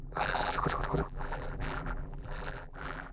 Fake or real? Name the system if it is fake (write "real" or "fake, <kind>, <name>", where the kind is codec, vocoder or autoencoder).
fake, vocoder, BigVGAN v2